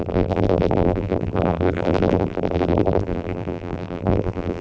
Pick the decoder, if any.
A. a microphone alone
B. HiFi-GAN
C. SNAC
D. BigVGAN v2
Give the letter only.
D